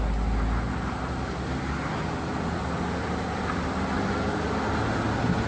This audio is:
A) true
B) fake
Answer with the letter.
A